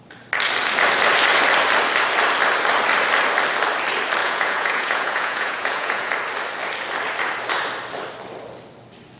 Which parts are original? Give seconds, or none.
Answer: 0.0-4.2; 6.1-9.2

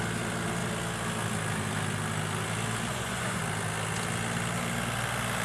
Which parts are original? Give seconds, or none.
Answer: 0.0-2.9; 3.4-5.4

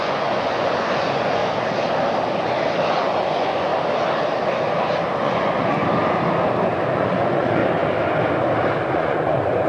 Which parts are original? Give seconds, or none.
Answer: 1.4-2.9; 3.7-5.2; 5.8-6.9; 7.6-8.9

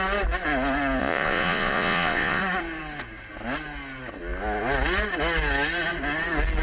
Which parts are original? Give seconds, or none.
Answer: 0.0-1.0; 2.4-6.6

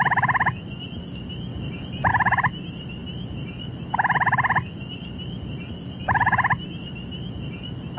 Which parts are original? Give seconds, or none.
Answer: 0.0-8.0

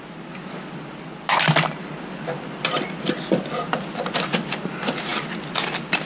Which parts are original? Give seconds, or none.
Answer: 0.0-6.1

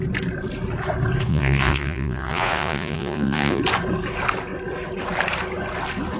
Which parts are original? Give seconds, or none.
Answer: 0.0-1.3; 3.6-6.2

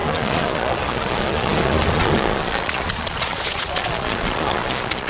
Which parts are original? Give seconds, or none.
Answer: none